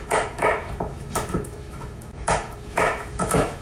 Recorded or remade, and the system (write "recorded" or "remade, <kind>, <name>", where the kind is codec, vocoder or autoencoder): remade, autoencoder, DAC-VAE